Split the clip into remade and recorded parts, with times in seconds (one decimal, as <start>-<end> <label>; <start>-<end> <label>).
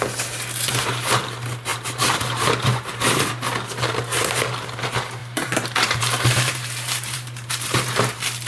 0.0-1.7 recorded; 1.7-3.3 remade; 3.3-5.2 recorded; 5.2-7.5 remade; 7.5-8.5 recorded